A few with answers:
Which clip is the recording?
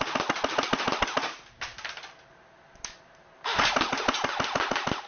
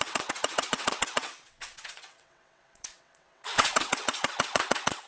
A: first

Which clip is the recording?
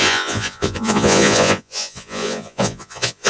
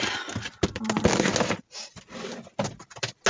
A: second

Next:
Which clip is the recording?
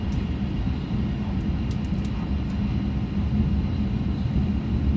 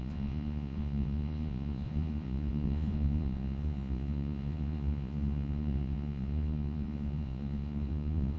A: first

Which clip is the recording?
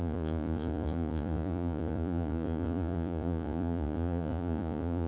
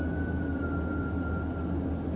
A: second